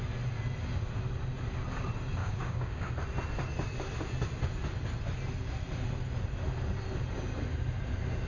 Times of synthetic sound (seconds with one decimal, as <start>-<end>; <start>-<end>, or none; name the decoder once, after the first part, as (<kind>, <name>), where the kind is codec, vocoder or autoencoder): 2.2-2.9 (codec, DAC)